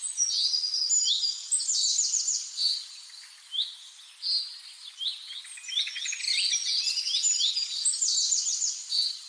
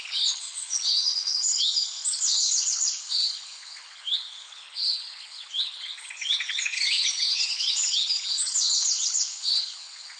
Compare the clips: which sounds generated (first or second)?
second